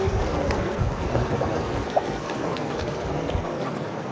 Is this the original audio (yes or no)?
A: no